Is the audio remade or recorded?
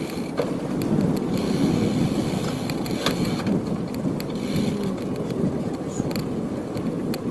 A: recorded